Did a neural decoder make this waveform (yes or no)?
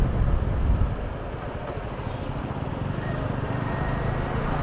no